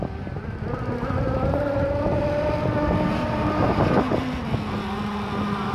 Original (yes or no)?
yes